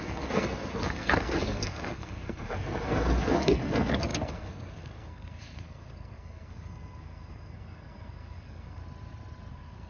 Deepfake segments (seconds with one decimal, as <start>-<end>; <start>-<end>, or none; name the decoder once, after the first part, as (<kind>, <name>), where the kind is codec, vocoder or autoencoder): 0.0-8.8 (codec, SNAC); 9.5-9.9